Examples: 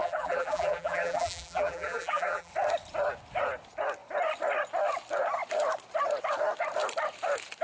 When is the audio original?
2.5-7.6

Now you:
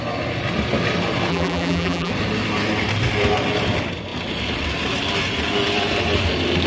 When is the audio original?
0.0-1.3; 2.1-6.7

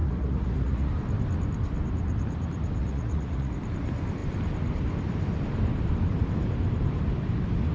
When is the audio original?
0.9-2.8; 3.5-7.7

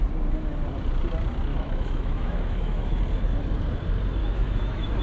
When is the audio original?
0.0-1.5; 3.0-4.2

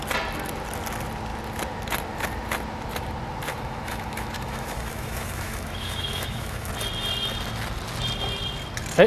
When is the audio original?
0.0-3.5; 6.7-9.1